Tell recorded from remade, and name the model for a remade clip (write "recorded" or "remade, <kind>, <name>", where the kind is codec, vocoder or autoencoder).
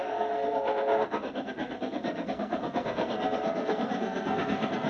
remade, codec, SNAC